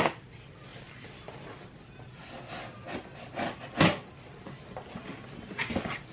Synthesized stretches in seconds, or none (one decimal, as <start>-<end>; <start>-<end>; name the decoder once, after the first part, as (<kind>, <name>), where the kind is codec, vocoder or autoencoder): none